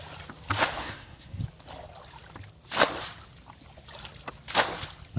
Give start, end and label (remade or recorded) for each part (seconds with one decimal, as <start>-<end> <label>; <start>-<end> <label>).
0.0-0.8 recorded; 0.8-1.4 remade; 1.4-5.2 recorded